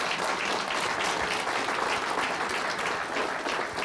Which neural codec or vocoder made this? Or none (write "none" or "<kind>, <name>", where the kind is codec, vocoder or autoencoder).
none